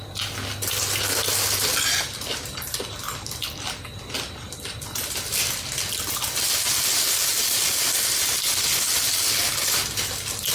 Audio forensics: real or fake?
real